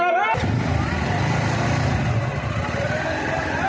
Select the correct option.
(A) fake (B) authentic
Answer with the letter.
B